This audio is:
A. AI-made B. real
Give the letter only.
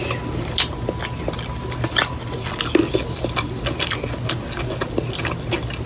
B